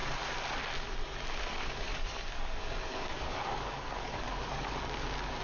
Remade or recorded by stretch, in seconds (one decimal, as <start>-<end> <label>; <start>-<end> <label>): 0.0-1.5 recorded; 1.5-4.7 remade; 4.7-5.4 recorded